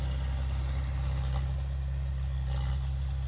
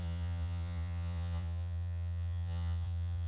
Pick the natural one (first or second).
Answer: first